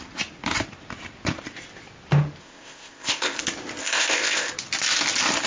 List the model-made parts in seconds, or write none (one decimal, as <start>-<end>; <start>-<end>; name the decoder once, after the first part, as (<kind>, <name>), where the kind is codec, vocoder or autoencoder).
2.4-3.4 (codec, ZipCodec); 3.8-4.5